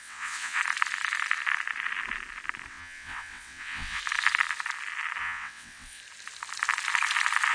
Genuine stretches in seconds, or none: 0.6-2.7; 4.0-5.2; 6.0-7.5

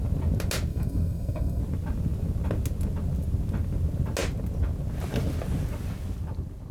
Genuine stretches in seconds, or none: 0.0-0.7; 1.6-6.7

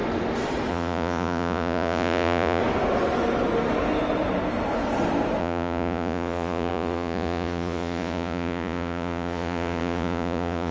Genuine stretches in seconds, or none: 0.0-0.7; 2.6-5.4

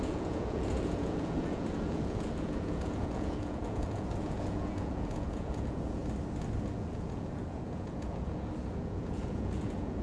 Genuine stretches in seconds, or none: 6.0-6.6